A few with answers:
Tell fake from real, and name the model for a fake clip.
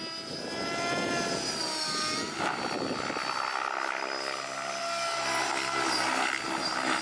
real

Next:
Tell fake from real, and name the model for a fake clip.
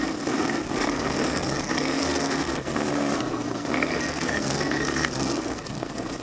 fake, codec, SNAC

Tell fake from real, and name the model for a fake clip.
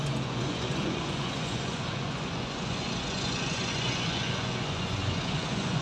fake, vocoder, Vocos